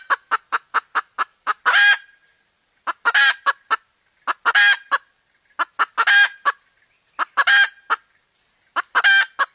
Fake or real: real